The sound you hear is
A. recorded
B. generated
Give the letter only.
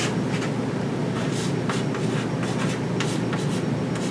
A